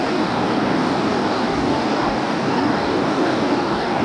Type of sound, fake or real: fake